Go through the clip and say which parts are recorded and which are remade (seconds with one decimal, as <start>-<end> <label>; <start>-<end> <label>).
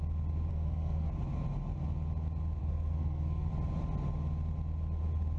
0.0-0.5 recorded; 0.5-1.1 remade; 1.1-2.6 recorded; 2.6-3.5 remade; 3.5-5.4 recorded